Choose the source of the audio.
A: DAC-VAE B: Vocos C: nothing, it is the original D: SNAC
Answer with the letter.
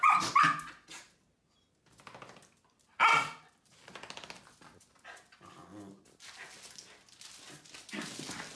C